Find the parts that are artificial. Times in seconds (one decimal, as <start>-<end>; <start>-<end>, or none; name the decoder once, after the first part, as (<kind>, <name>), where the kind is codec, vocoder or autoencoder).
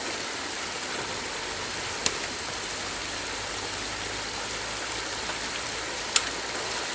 none